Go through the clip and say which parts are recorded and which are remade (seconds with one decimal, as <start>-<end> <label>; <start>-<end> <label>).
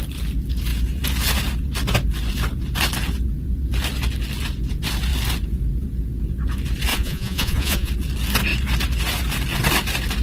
0.0-6.9 recorded; 6.9-7.9 remade; 7.9-10.2 recorded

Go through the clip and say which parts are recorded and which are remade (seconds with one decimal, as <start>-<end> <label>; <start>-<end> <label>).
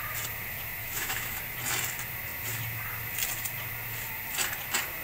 0.0-0.8 recorded; 0.8-1.4 remade; 1.4-5.0 recorded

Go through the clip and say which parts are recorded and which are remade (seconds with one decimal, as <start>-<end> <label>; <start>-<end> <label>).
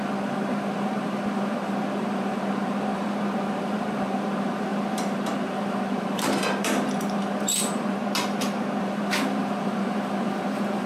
0.0-8.0 remade; 8.0-8.8 recorded; 8.8-10.9 remade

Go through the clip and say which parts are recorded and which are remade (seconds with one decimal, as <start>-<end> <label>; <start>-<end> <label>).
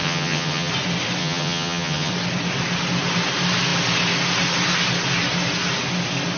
0.0-0.7 remade; 0.7-1.2 recorded; 1.2-2.1 remade; 2.1-6.4 recorded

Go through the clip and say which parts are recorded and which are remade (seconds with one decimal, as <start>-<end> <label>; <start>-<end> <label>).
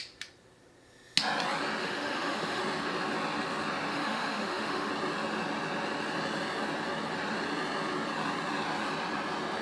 0.0-1.8 recorded; 1.8-2.6 remade; 2.6-3.9 recorded; 3.9-4.9 remade; 4.9-9.6 recorded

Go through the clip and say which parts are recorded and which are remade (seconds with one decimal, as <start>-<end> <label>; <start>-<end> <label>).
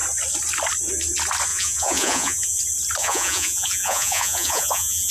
0.0-1.5 recorded; 1.5-2.6 remade; 2.6-3.0 recorded; 3.0-5.1 remade